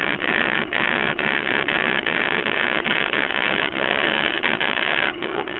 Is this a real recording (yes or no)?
no